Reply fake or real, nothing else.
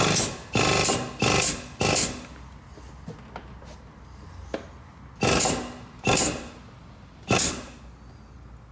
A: real